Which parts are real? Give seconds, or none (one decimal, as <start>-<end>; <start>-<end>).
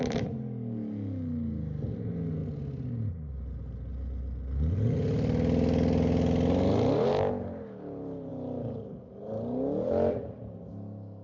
0.0-11.2